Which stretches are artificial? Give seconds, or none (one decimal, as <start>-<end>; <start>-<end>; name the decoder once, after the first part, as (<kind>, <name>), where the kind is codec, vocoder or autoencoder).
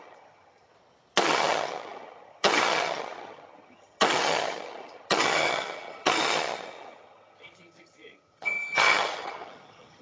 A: 0.0-0.7 (vocoder, HiFi-GAN); 1.2-10.0